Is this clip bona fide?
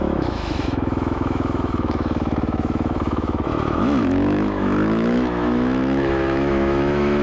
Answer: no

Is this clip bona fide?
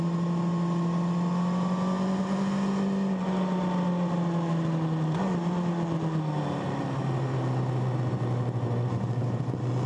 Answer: yes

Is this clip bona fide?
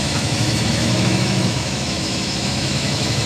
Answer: no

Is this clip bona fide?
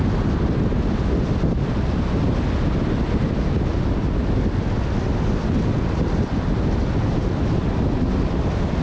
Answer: yes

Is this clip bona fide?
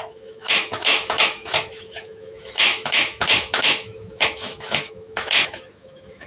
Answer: no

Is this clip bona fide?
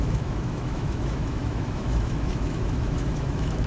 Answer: no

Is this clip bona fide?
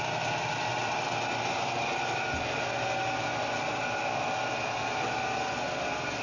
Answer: yes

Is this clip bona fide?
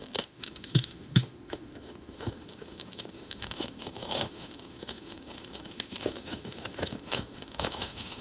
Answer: no